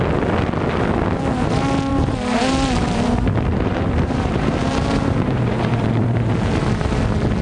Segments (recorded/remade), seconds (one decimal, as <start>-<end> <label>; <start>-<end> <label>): 0.0-1.9 recorded; 1.9-6.3 remade; 6.3-7.4 recorded